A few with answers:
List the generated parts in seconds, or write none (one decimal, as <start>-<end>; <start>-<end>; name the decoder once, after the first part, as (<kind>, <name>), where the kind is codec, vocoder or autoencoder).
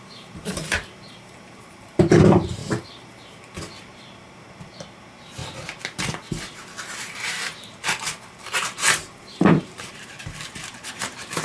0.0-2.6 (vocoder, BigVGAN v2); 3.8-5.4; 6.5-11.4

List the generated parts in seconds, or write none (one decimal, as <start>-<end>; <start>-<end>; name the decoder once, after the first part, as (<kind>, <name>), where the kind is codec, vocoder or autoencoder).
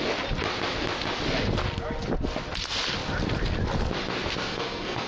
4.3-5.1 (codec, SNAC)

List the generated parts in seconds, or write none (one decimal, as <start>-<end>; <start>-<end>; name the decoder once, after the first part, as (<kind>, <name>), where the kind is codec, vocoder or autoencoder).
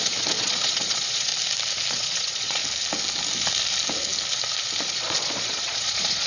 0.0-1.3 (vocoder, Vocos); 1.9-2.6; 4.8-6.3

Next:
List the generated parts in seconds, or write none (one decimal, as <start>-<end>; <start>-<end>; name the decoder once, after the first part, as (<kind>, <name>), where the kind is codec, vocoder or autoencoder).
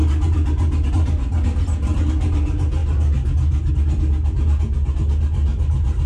none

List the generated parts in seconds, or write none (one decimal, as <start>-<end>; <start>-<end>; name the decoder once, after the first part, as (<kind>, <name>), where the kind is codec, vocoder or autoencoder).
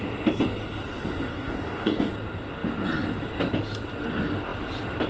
1.3-2.1 (codec, DAC)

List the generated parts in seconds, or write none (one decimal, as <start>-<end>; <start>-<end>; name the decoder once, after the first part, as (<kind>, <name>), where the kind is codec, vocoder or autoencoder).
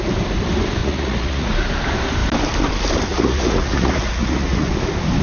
0.8-1.5 (vocoder, Vocos); 3.1-4.7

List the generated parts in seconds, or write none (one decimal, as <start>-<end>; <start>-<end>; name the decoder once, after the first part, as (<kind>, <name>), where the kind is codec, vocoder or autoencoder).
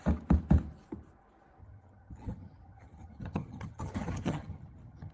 1.6-5.1 (vocoder, HiFi-GAN)